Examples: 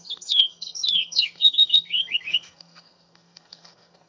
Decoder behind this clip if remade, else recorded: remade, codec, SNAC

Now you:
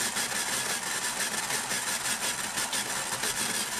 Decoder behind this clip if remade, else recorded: recorded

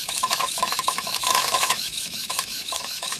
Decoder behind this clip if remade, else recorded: remade, autoencoder, DAC-VAE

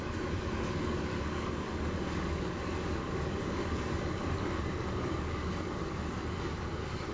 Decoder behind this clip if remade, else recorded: remade, codec, DAC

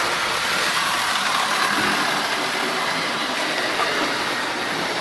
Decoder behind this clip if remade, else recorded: recorded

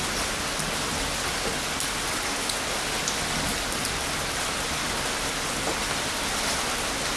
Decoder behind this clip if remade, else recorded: recorded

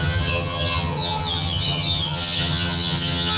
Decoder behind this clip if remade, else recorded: remade, vocoder, HiFi-GAN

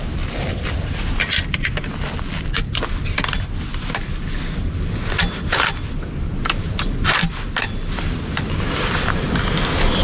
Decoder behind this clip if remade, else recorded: recorded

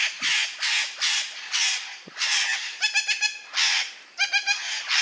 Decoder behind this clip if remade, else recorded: recorded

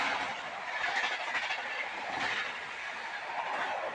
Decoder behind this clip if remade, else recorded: recorded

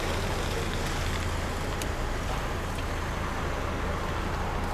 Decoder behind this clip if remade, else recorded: recorded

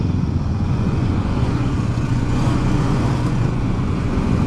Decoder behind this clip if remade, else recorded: remade, vocoder, Vocos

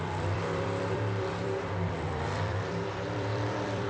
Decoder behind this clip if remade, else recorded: remade, vocoder, BigVGAN v2